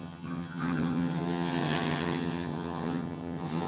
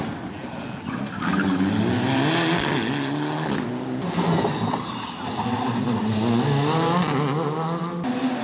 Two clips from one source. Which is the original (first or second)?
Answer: second